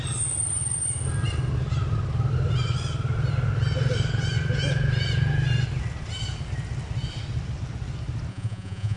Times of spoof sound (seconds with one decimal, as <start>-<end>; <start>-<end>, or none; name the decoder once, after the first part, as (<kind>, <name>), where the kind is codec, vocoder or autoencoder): 8.3-9.0 (vocoder, Vocos)

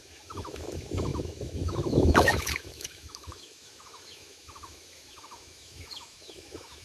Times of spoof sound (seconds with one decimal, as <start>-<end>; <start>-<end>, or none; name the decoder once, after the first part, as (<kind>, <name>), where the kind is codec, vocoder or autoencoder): 0.0-6.8 (autoencoder, DAC-VAE)